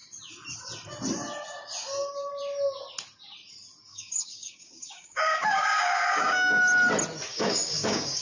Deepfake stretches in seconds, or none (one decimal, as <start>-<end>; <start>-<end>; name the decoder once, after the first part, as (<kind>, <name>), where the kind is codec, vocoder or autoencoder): 3.9-6.6 (codec, DAC); 7.3-8.2